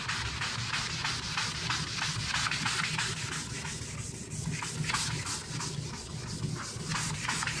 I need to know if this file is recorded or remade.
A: recorded